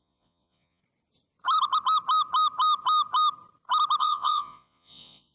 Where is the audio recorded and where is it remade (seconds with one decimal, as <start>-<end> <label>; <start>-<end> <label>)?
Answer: 0.0-0.8 remade; 0.8-4.0 recorded; 4.0-5.3 remade